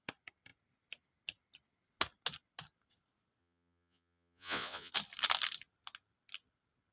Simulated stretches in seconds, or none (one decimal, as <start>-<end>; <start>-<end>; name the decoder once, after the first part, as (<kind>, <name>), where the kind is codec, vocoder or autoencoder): 3.4-4.9 (vocoder, Vocos)